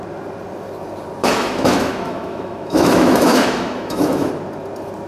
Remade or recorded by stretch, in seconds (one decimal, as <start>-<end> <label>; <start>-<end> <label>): 0.0-1.2 recorded; 1.2-4.3 remade; 4.3-5.1 recorded